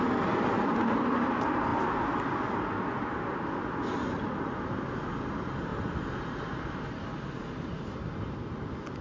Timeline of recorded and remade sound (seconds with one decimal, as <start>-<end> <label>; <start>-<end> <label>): 0.0-9.0 recorded